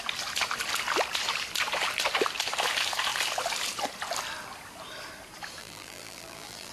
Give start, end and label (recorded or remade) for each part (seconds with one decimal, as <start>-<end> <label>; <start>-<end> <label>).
0.0-5.6 recorded; 5.6-6.7 remade